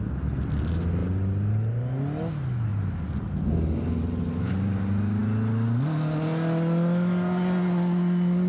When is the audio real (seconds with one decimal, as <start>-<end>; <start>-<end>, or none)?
0.0-8.5